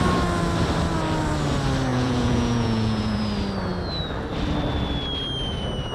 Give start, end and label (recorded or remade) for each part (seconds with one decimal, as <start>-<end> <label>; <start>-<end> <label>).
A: 0.0-1.9 recorded; 1.9-3.2 remade; 3.2-5.9 recorded